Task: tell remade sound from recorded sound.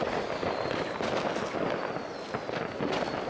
recorded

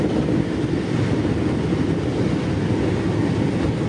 recorded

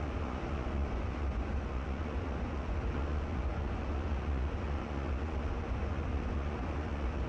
remade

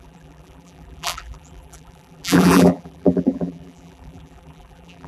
remade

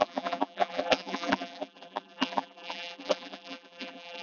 remade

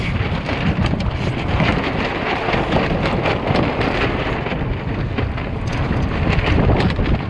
recorded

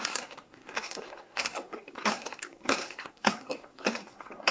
remade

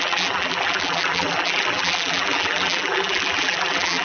remade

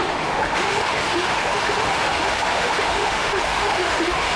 remade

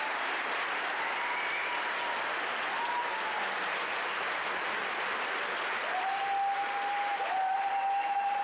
recorded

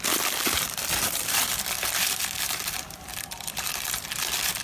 remade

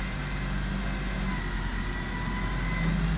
recorded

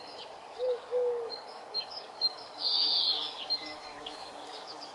remade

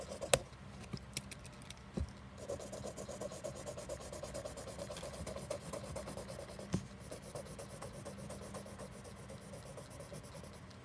recorded